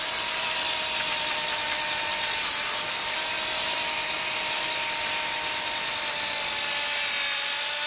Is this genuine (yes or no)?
yes